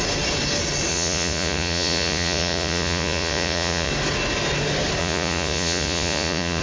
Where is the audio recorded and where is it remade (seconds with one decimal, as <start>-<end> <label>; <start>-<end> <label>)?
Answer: 0.0-0.9 recorded; 0.9-3.9 remade; 3.9-5.0 recorded; 5.0-6.6 remade